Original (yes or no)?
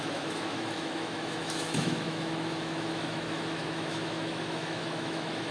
no